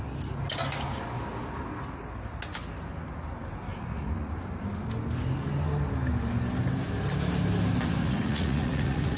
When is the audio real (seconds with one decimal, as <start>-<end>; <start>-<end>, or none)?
0.0-3.7; 4.3-8.0